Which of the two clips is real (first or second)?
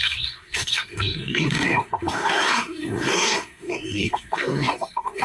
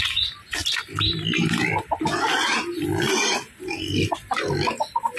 second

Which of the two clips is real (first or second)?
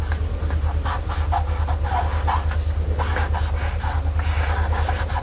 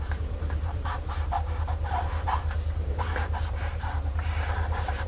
first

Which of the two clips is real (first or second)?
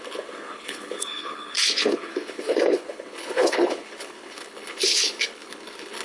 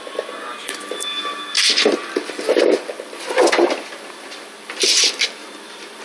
second